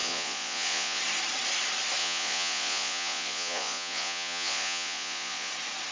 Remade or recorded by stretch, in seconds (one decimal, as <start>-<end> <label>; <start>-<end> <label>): 0.0-1.0 remade; 1.0-2.0 recorded; 2.0-5.5 remade; 5.5-5.9 recorded